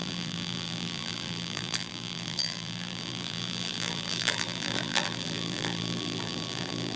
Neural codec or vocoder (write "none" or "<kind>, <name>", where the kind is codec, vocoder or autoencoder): vocoder, BigVGAN v2